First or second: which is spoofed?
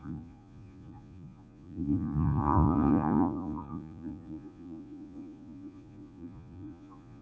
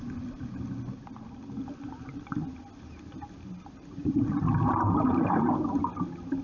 first